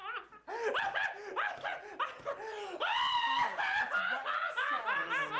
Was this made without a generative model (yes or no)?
yes